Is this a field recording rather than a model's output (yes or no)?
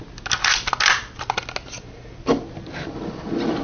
yes